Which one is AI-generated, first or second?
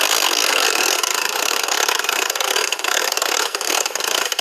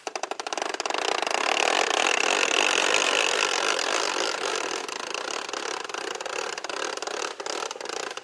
first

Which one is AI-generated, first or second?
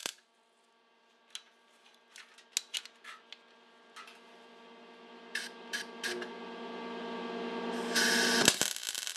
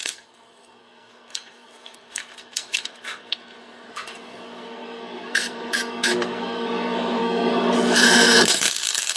second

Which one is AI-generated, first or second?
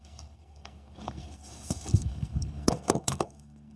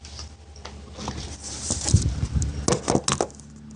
first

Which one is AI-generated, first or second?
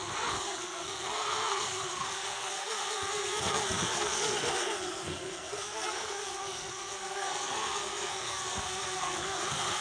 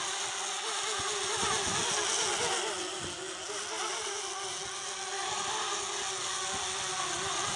first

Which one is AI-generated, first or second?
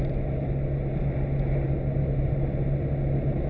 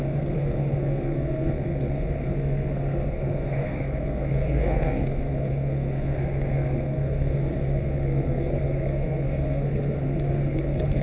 second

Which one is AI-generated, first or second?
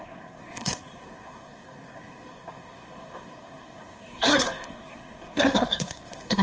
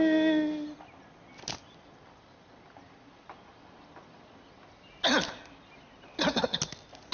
first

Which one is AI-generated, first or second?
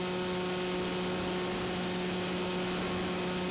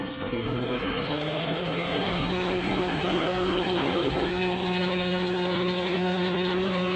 second